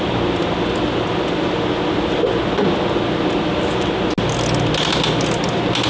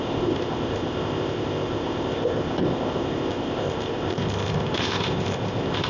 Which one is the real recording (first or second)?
first